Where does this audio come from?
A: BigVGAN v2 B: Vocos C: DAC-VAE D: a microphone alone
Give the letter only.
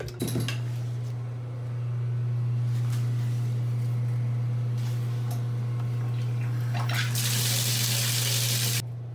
D